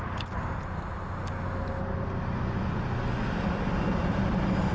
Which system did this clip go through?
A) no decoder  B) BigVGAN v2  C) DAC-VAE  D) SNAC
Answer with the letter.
A